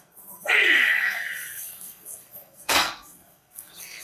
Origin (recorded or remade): remade